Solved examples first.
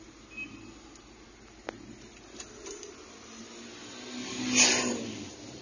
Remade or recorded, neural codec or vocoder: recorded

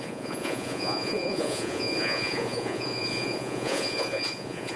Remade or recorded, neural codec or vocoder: remade, vocoder, Vocos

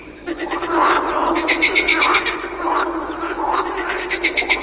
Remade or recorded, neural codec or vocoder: remade, vocoder, Vocos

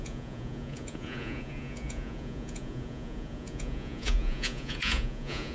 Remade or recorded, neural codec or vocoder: remade, vocoder, Vocos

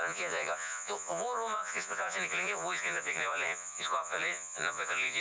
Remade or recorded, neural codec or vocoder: remade, vocoder, Vocos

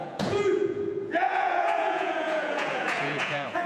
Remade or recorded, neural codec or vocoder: remade, vocoder, Vocos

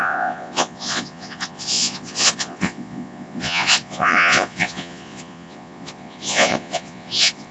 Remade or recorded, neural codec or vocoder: remade, vocoder, Vocos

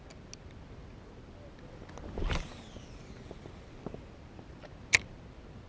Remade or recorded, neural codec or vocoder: recorded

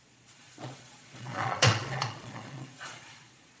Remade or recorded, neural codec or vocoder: remade, vocoder, Vocos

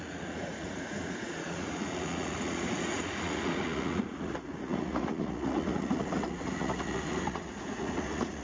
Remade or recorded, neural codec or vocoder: remade, vocoder, Vocos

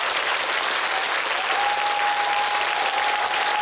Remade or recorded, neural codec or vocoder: recorded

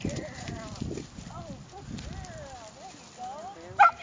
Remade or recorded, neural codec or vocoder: recorded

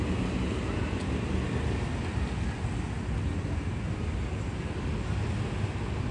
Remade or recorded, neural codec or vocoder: recorded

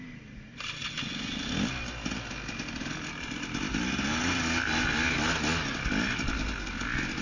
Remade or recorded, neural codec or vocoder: recorded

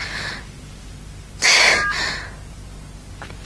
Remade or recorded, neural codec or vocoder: recorded